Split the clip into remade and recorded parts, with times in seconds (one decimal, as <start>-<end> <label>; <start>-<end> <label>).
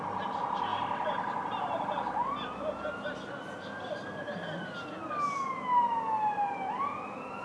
0.0-7.4 recorded